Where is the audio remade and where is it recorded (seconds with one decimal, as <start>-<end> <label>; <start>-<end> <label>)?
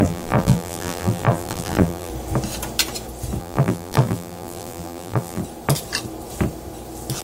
0.0-2.1 remade; 2.1-3.4 recorded; 3.4-5.4 remade; 5.4-7.2 recorded